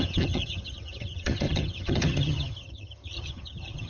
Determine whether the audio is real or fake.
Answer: fake